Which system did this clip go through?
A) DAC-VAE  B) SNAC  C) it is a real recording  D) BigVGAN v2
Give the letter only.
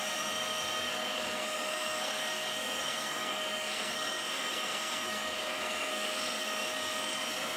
B